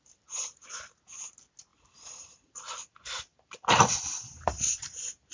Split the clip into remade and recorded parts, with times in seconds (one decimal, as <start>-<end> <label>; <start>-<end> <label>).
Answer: 0.0-1.7 recorded; 1.7-5.3 remade